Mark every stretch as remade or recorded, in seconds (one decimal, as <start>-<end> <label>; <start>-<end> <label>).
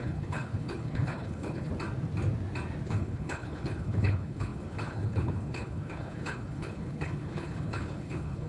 0.0-1.7 remade; 1.7-2.9 recorded; 2.9-8.5 remade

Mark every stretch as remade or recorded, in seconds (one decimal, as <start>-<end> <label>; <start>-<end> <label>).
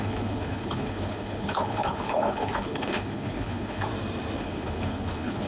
0.0-3.9 remade; 3.9-4.4 recorded; 4.4-5.5 remade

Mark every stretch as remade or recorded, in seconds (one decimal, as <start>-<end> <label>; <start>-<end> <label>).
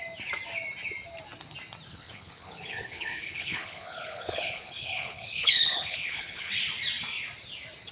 0.0-1.9 recorded; 1.9-6.6 remade; 6.6-7.9 recorded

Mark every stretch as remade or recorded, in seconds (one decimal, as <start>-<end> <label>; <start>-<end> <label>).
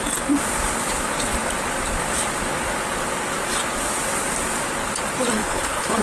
0.0-5.4 recorded; 5.4-6.0 remade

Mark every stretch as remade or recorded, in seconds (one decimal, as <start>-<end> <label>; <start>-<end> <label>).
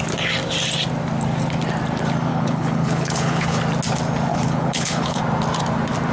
0.0-2.3 recorded; 2.3-3.6 remade; 3.6-4.3 recorded; 4.3-5.2 remade; 5.2-6.1 recorded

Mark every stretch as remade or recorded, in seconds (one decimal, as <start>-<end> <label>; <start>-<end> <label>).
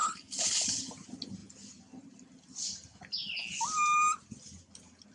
0.0-0.9 remade; 0.9-5.1 recorded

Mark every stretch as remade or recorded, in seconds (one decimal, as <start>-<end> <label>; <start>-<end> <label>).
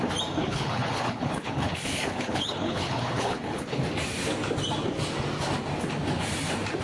0.0-0.4 recorded; 0.4-3.8 remade; 3.8-6.8 recorded